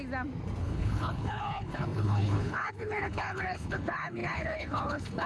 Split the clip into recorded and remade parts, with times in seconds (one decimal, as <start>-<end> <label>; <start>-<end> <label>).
0.0-0.6 recorded; 0.6-5.3 remade